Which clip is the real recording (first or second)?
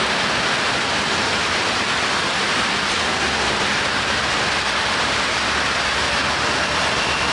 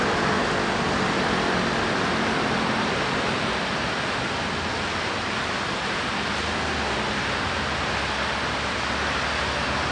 second